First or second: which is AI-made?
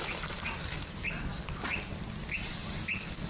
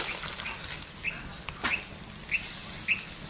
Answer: first